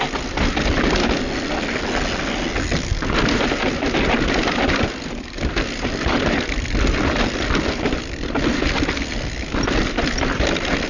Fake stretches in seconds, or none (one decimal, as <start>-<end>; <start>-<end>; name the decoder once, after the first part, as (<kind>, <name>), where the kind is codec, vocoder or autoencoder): none